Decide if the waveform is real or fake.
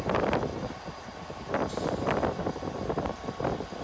real